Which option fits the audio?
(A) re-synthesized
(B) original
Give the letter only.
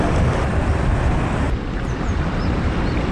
B